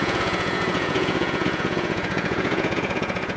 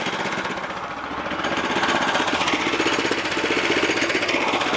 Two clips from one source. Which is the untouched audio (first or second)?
second